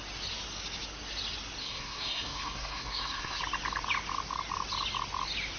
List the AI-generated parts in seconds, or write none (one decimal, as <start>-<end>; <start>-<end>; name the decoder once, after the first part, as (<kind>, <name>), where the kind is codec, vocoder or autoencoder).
1.6-3.4 (codec, SNAC)